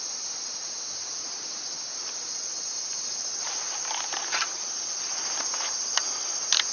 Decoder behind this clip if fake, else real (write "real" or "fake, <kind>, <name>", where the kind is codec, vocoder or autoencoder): real